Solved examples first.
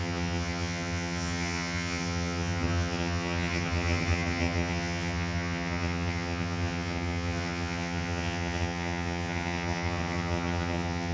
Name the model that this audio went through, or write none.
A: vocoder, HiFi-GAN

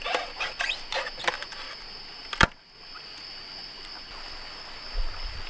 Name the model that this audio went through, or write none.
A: none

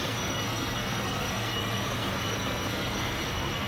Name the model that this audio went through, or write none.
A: codec, SNAC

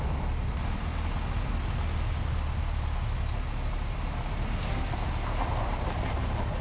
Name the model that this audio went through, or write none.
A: none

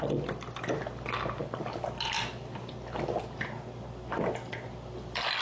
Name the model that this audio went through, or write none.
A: none